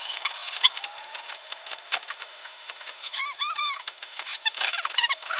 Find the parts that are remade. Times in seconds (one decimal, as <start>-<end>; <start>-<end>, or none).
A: 0.0-5.4

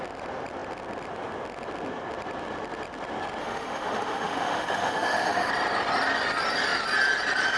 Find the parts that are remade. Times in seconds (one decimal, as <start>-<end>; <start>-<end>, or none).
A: 3.4-5.5

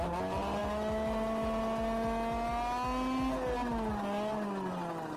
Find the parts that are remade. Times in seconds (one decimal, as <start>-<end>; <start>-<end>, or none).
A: none

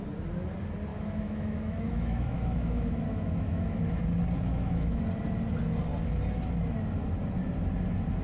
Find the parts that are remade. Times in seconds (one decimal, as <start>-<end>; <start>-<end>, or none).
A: 0.9-3.8; 4.5-5.0